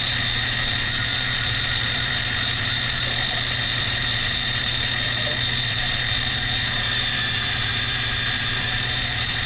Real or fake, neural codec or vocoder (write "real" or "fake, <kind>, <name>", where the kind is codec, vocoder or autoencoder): fake, vocoder, BigVGAN v2